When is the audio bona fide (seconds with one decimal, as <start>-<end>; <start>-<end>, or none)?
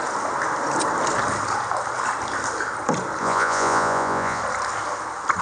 0.0-3.2; 4.4-5.4